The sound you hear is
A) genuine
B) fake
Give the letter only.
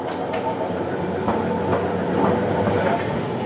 A